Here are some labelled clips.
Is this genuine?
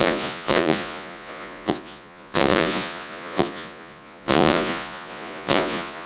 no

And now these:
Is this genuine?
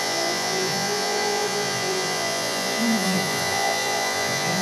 no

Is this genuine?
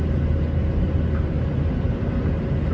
yes